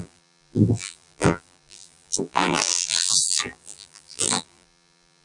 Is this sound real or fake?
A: fake